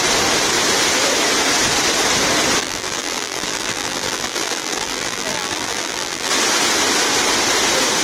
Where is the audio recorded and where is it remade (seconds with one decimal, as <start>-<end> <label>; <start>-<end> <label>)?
0.0-2.6 recorded; 2.6-6.3 remade; 6.3-8.0 recorded